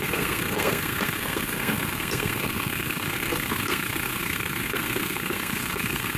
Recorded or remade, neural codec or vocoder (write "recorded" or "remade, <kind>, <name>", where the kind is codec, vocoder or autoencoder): remade, codec, SNAC